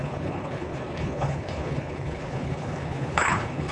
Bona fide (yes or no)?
no